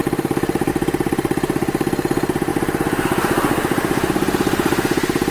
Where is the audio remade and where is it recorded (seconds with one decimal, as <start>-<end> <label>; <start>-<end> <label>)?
0.0-0.7 remade; 0.7-5.3 recorded